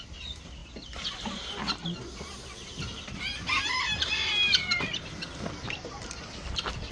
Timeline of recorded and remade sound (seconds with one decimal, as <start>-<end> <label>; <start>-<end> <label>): 0.0-6.9 recorded